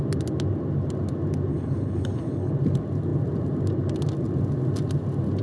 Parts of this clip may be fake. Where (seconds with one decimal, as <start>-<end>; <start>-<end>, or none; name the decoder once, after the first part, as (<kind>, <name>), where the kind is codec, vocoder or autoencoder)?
1.5-2.5 (codec, HILCodec)